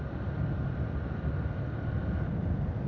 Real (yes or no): yes